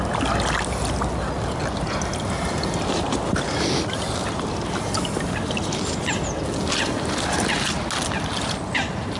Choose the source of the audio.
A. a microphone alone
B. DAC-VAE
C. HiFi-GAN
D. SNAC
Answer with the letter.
A